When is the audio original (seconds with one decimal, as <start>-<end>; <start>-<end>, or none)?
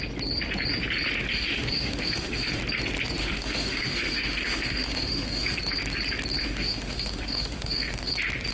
0.0-1.3; 2.6-3.2; 5.6-6.4; 8.1-8.5